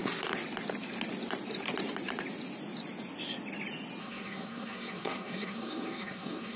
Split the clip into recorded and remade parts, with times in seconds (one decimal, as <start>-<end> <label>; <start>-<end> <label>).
0.0-4.0 recorded; 4.0-6.6 remade